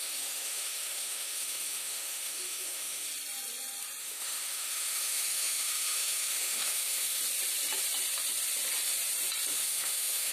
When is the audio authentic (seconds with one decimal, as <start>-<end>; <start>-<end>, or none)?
3.1-4.0; 7.2-9.5